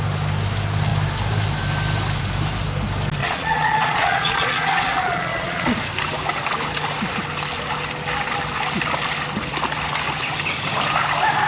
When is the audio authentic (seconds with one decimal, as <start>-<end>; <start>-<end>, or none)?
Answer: 0.0-3.2; 5.7-11.5